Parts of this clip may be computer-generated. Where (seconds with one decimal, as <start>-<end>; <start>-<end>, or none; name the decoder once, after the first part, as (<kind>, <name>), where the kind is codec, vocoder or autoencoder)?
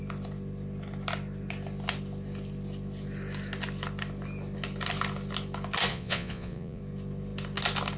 5.9-6.8 (vocoder, Vocos)